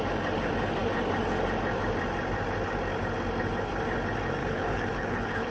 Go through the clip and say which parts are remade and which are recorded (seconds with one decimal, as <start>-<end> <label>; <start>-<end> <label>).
0.0-4.4 recorded; 4.4-5.5 remade